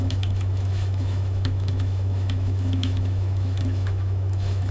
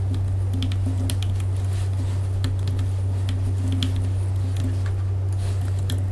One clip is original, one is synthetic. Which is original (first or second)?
second